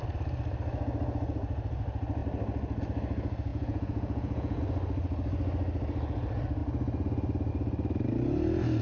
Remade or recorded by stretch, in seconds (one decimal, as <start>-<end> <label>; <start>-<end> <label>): 0.0-3.5 recorded; 3.5-4.6 remade; 4.6-8.8 recorded